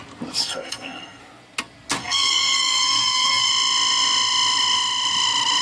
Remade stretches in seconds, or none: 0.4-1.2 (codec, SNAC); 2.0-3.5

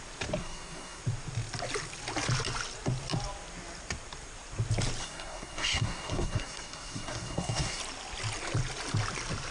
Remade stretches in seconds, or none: 0.4-1.0 (codec, SNAC); 5.0-7.8

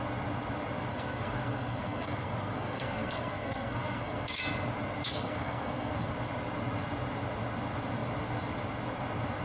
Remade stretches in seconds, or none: 0.9-4.4 (codec, SNAC); 5.0-6.1

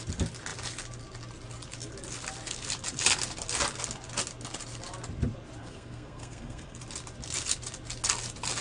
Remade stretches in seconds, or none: 5.6-6.8 (codec, SNAC)

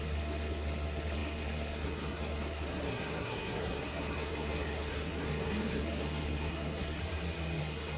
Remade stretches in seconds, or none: 0.0-7.0 (codec, SNAC); 7.6-8.0

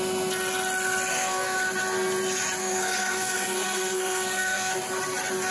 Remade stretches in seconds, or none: 1.1-1.6 (codec, SNAC); 2.6-4.7

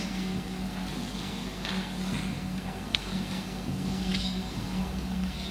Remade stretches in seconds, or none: 0.0-5.5 (codec, SNAC)

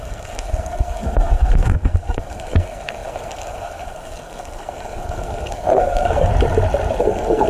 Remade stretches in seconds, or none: 0.0-6.3 (codec, SNAC); 7.0-7.5